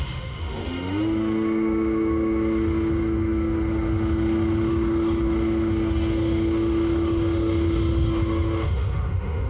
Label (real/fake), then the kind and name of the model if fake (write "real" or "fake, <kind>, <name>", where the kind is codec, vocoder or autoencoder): fake, autoencoder, DAC-VAE